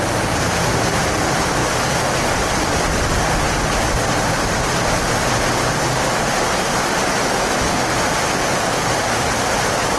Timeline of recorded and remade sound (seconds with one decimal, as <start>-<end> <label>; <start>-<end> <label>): 0.0-10.0 recorded